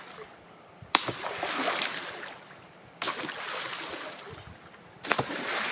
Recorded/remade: recorded